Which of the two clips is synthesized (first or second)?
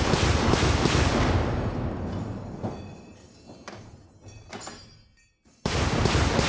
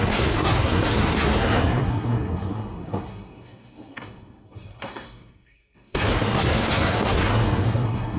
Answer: second